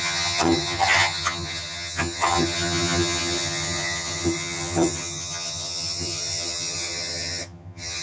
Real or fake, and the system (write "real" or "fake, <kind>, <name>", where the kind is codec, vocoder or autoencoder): fake, vocoder, HiFi-GAN